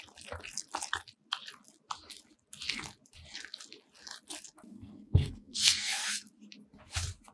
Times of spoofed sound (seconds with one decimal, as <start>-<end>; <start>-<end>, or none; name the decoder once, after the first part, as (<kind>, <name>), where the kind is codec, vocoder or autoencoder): 4.7-6.3 (codec, SNAC)